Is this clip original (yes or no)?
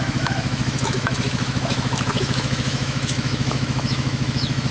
no